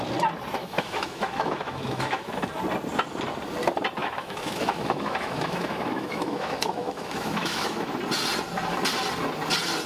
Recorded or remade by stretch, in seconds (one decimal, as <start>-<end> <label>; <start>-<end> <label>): 0.0-0.6 recorded; 0.6-2.3 remade; 2.3-4.0 recorded; 4.0-7.9 remade; 7.9-9.9 recorded